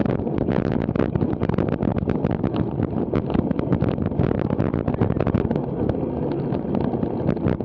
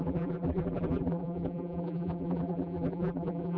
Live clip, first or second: first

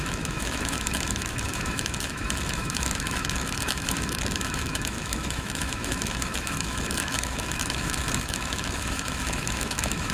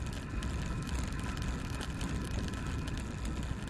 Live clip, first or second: second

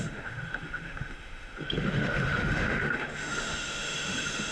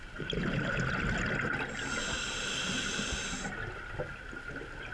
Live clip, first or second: second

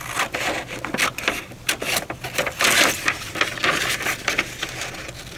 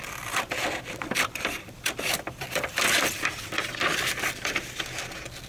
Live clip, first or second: first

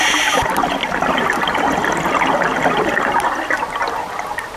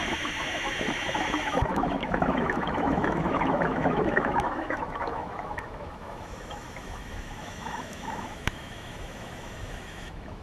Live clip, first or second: first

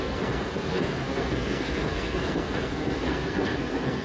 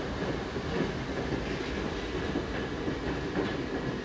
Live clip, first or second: second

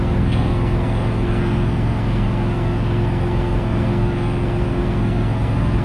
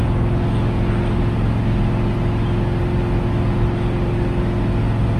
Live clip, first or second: second